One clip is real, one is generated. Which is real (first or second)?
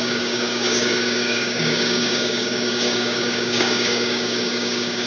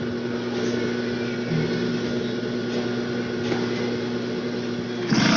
second